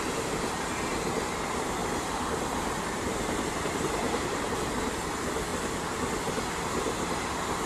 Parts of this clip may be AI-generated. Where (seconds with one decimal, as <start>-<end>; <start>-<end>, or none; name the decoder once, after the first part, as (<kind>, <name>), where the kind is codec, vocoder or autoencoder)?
1.8-4.4 (vocoder, BigVGAN v2)